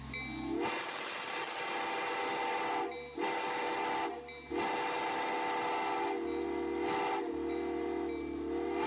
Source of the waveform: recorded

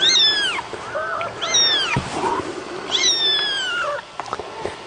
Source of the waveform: recorded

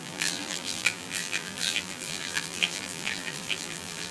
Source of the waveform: remade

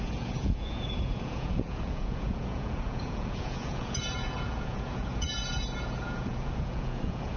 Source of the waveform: remade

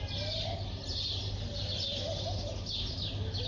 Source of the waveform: recorded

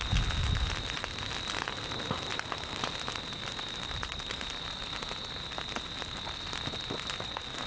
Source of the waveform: recorded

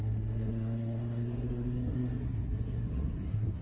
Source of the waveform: remade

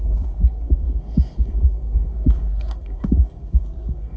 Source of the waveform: remade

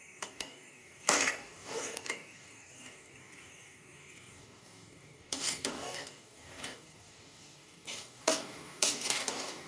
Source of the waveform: remade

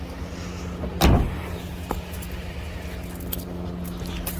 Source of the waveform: recorded